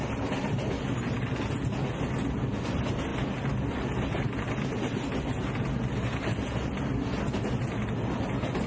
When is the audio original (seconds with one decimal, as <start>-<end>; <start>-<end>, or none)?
0.0-8.7

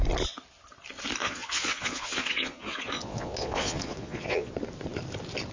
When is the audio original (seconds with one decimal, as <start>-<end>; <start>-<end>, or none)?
0.0-1.2; 4.5-5.5

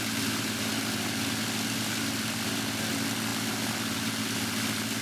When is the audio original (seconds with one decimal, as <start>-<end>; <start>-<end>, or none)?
0.0-5.0

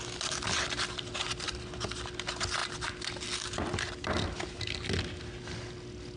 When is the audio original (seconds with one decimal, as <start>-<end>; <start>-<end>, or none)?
0.0-6.2

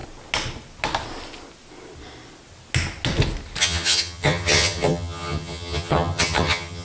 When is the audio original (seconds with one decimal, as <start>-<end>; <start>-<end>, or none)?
0.0-3.6

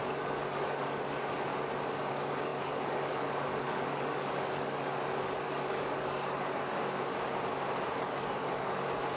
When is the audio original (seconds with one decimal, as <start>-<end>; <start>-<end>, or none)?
1.5-2.1; 7.1-8.0

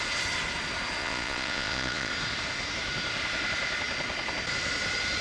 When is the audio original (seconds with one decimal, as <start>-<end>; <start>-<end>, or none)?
0.0-1.0; 2.1-5.2

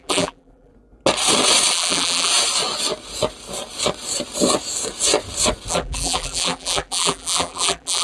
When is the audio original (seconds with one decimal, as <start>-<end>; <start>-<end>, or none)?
0.7-1.7; 2.3-5.7